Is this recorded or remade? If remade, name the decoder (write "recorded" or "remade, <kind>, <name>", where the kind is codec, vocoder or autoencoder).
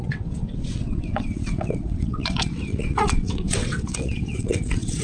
remade, vocoder, WaveNeXt